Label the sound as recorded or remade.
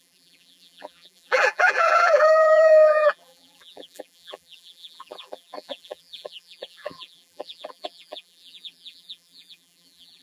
remade